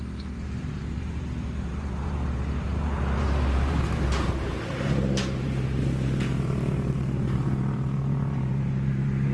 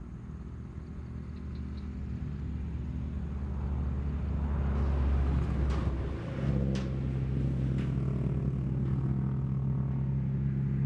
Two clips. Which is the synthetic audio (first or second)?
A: first